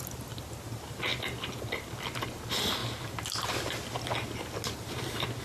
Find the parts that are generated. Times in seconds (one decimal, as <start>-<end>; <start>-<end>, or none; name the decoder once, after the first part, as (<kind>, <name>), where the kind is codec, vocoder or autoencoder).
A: none